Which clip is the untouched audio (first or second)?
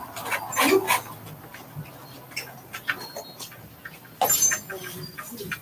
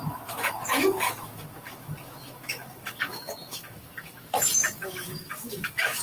first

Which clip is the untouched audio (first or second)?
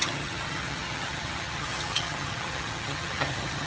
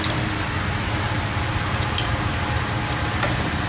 second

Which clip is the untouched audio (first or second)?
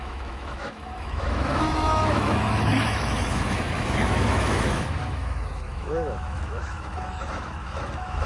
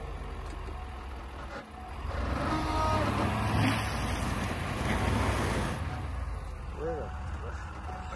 second